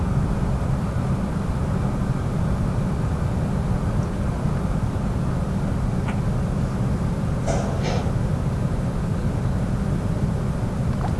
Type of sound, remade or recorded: recorded